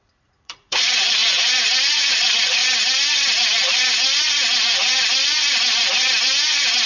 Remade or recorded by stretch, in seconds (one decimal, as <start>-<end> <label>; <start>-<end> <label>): 0.0-1.2 remade; 1.2-1.8 recorded; 1.8-2.6 remade; 2.6-6.9 recorded